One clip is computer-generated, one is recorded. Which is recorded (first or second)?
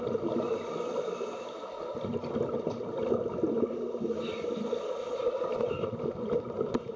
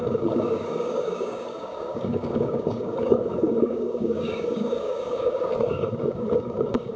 first